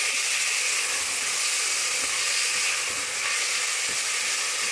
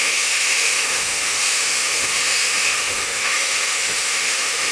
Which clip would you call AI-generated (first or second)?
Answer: second